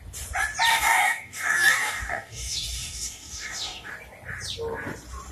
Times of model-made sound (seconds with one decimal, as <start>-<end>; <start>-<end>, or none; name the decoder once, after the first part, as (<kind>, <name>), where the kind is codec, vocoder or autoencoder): 0.7-3.9 (codec, DAC)